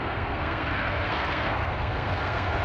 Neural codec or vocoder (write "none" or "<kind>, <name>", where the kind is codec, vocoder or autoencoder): codec, SNAC